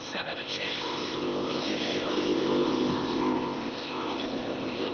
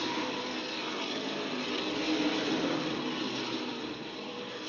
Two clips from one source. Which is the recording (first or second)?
second